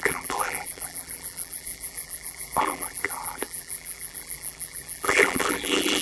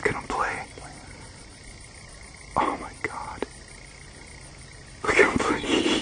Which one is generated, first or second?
first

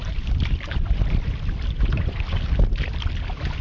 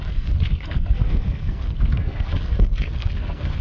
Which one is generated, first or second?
second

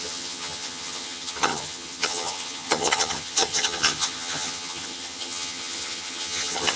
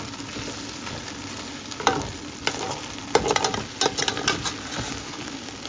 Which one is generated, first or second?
first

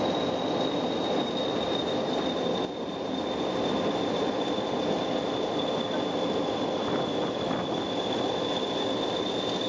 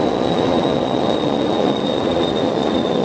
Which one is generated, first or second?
second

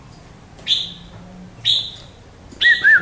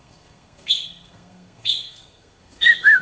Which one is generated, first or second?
second